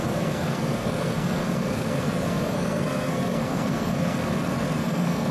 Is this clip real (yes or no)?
no